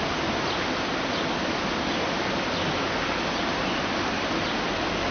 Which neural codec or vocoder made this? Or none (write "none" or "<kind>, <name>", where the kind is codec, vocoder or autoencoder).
none